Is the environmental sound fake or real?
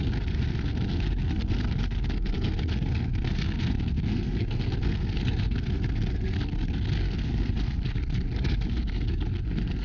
fake